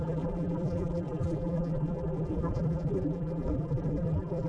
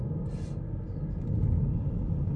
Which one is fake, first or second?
first